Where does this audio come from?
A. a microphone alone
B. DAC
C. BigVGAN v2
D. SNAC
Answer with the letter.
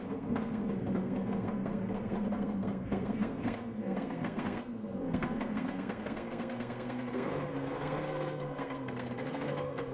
D